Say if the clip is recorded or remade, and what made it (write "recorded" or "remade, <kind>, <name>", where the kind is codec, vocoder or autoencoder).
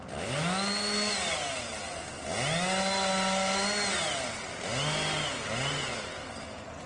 recorded